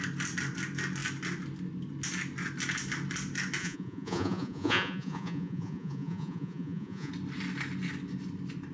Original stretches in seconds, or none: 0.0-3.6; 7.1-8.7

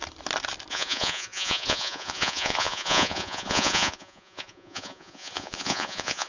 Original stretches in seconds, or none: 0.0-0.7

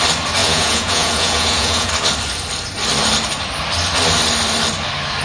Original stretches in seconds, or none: 0.0-0.4; 1.9-5.2

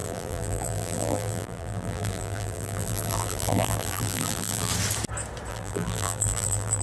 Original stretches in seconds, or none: 4.7-5.5

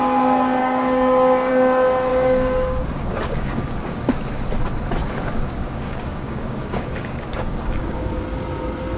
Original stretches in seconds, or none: 0.0-0.6; 1.5-2.1; 4.0-5.0; 8.2-9.0

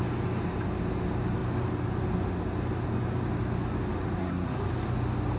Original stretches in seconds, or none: 0.0-4.2; 4.7-5.4